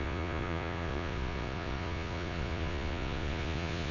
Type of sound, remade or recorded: remade